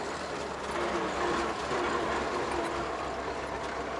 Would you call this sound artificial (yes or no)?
no